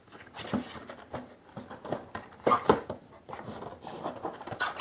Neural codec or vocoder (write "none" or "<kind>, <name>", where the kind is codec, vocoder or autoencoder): none